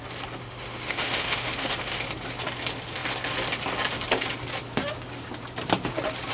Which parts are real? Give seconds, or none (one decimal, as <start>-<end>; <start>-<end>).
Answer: 0.0-0.4; 2.0-6.3